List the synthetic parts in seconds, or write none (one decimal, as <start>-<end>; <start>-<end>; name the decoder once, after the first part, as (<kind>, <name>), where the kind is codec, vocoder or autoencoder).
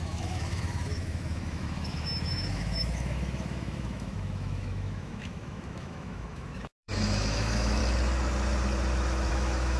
0.0-7.8 (autoencoder, DAC-VAE); 9.3-9.8